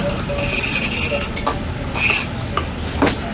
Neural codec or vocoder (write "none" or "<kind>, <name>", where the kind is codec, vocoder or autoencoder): none